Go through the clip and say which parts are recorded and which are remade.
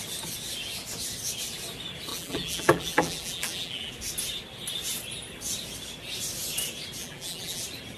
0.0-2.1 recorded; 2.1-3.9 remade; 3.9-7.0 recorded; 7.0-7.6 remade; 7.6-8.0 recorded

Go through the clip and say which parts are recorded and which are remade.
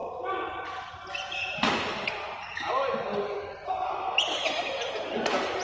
0.0-5.6 recorded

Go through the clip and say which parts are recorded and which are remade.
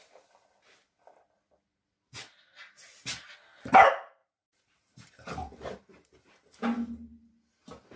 0.0-4.2 recorded; 4.2-6.3 remade; 6.3-8.0 recorded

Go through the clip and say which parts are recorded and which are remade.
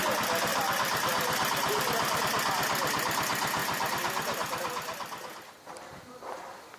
0.0-0.5 recorded; 0.5-2.2 remade; 2.2-6.8 recorded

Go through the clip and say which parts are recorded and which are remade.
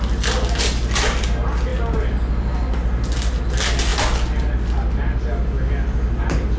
0.0-6.6 recorded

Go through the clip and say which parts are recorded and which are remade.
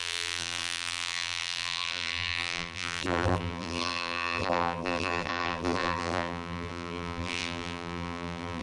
0.0-8.6 remade